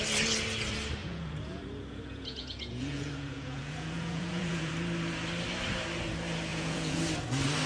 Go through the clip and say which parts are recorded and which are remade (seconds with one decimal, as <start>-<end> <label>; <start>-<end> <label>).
0.0-1.0 recorded; 1.0-4.7 remade; 4.7-6.5 recorded; 6.5-7.0 remade; 7.0-7.7 recorded